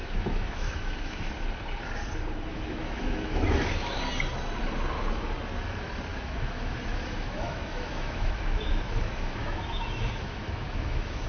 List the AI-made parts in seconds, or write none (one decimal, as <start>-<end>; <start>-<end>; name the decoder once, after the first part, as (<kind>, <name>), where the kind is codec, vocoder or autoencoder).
0.0-1.3 (autoencoder, DAC-VAE); 2.5-4.0; 6.1-11.3